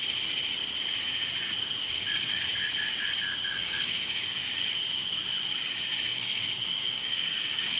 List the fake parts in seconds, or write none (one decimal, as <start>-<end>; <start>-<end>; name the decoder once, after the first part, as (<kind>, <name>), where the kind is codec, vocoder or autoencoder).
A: 1.8-2.4 (codec, DAC); 3.5-4.7; 6.1-7.8

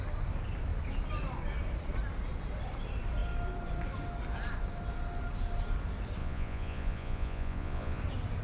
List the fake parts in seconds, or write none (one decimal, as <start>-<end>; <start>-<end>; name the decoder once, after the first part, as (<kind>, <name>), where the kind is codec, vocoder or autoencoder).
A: 6.2-8.0 (vocoder, Vocos)

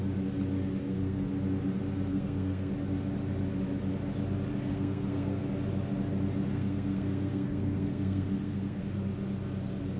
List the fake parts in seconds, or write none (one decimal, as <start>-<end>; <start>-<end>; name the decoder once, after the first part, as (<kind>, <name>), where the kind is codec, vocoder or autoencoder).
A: 0.8-1.3 (codec, SNAC); 2.1-2.7; 4.7-5.4; 6.5-8.8

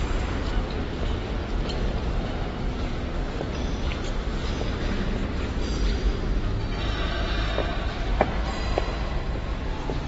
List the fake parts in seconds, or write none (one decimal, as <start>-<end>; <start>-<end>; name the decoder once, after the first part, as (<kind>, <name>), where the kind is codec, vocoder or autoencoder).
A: 7.6-9.7 (vocoder, BigVGAN v2)

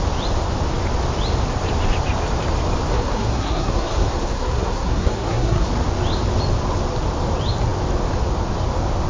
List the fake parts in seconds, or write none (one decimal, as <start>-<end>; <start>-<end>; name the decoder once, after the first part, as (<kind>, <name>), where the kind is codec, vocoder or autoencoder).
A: 2.9-5.7 (codec, SNAC)

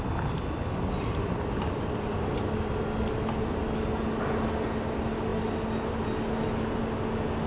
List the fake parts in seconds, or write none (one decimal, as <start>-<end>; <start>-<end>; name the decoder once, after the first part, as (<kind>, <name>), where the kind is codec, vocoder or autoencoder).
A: none

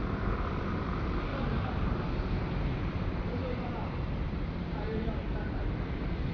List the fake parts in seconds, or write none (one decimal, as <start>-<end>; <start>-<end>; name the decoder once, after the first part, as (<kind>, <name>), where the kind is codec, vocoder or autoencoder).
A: 0.0-6.3 (vocoder, BigVGAN v2)

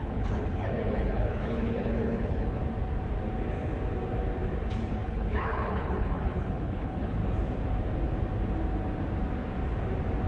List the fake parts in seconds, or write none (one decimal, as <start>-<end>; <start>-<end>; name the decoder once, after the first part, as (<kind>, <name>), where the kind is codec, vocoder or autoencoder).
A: 0.0-2.6 (codec, HILCodec); 4.8-7.2